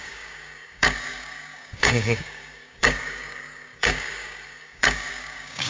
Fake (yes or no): yes